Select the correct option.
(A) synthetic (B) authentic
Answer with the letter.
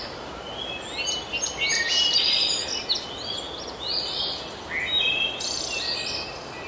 B